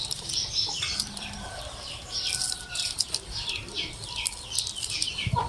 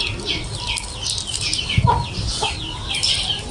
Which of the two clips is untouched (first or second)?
second